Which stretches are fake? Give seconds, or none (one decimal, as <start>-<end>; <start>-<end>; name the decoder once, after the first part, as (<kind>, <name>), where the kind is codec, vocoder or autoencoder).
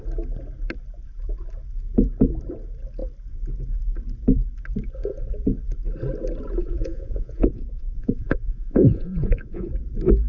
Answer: 6.6-9.7 (vocoder, Vocos)